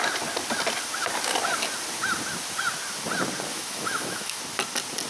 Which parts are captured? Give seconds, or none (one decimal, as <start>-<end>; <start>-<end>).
0.0-3.5; 4.4-5.1

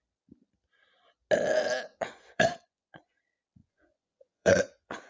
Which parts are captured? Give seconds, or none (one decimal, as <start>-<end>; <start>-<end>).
0.0-1.9; 3.2-3.6

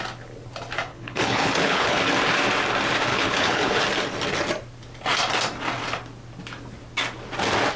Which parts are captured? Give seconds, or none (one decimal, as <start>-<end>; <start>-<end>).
0.0-0.9; 2.0-3.1; 3.8-7.8

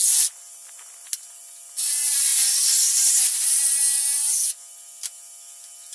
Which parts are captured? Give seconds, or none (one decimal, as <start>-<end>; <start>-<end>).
0.0-5.9

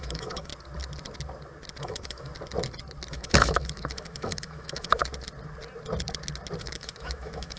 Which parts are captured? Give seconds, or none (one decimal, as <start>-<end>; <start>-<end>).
0.5-1.8; 2.3-3.1; 5.0-6.6

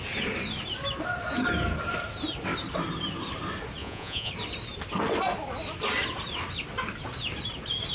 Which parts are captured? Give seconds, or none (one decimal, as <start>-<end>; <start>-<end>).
0.0-3.8; 4.3-7.9

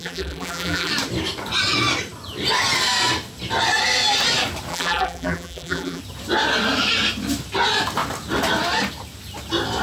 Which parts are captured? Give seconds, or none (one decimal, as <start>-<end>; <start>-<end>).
0.9-4.7; 6.0-9.8